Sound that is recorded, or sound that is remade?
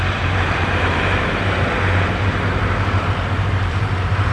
remade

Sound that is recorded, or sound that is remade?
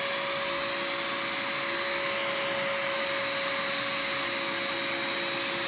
recorded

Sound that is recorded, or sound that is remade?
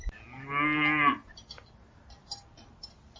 recorded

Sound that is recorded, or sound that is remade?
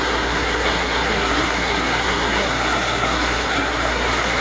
remade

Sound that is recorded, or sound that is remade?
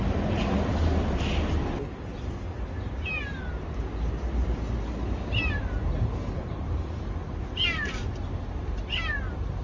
recorded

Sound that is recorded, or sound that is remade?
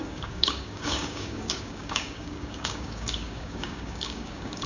remade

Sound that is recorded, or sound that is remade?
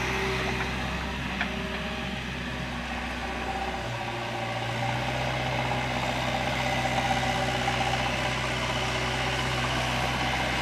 recorded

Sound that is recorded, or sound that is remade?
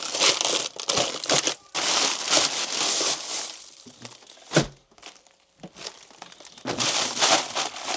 recorded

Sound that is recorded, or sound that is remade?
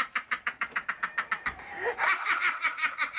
remade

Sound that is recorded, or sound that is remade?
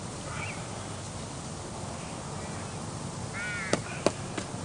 recorded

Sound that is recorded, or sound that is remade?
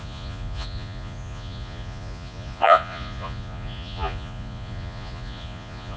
remade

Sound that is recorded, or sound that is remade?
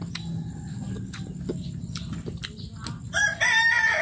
recorded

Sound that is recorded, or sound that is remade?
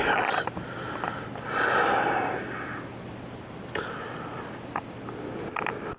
recorded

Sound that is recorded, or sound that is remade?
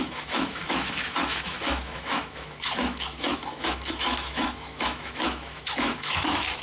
remade